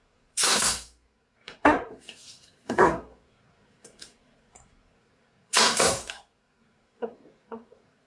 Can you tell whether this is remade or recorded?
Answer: remade